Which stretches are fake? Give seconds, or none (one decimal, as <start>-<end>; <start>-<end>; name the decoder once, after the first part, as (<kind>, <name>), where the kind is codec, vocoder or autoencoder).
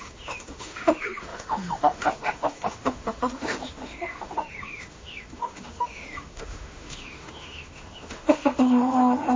0.0-9.4 (autoencoder, DAC-VAE)